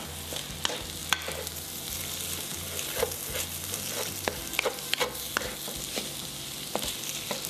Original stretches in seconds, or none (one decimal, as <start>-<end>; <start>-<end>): 0.0-7.5